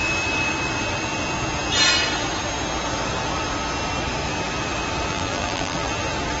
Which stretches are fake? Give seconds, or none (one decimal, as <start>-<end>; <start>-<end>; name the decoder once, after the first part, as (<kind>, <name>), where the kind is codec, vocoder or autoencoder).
5.1-5.9 (vocoder, BigVGAN v2)